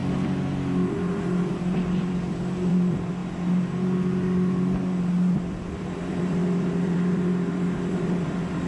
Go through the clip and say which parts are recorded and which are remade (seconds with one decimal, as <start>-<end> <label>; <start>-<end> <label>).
0.0-1.5 recorded; 1.5-3.2 remade; 3.2-5.5 recorded; 5.5-8.7 remade